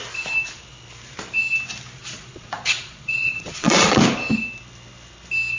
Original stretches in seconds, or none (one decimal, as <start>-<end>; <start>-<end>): 0.0-2.0; 4.0-5.6